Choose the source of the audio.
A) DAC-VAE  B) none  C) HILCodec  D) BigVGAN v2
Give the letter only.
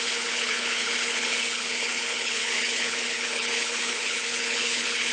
C